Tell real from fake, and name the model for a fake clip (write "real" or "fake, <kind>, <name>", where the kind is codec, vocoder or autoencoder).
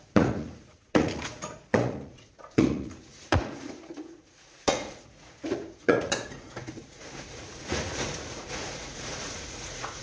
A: fake, vocoder, Vocos